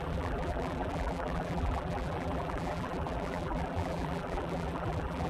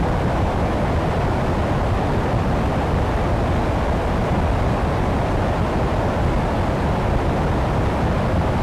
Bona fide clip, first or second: second